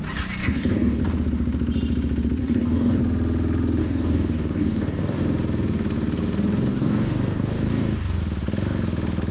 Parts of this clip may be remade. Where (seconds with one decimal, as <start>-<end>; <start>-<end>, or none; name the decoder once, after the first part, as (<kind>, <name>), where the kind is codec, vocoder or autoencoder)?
0.4-1.0 (codec, DAC); 2.4-3.0; 3.8-5.2; 6.7-8.2